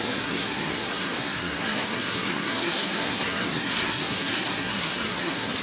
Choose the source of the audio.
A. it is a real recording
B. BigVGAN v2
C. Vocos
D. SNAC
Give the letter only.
D